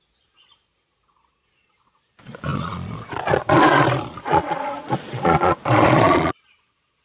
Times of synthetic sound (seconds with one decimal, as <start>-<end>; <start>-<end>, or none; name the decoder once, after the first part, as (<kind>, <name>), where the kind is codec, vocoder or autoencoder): 0.0-7.0 (vocoder, Vocos)